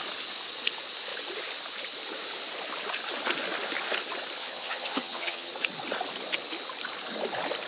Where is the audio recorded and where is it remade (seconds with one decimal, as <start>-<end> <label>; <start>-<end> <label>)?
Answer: 0.0-4.4 recorded; 4.4-5.5 remade; 5.5-7.7 recorded